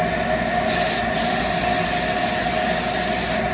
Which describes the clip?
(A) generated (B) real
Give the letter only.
B